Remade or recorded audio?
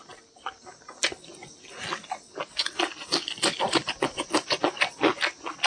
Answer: recorded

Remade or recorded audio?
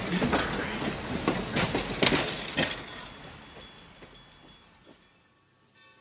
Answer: recorded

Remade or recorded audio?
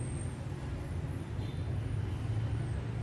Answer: recorded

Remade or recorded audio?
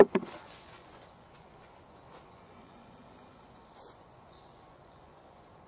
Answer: remade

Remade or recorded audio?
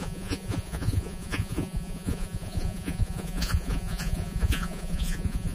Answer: remade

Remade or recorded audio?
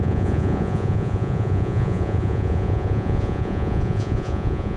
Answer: remade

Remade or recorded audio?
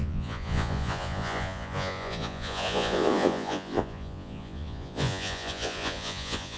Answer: remade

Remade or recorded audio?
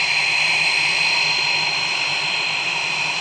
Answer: recorded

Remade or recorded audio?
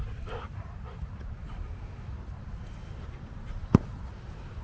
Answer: recorded